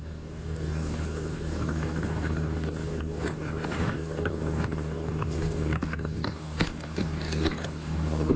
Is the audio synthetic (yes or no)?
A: yes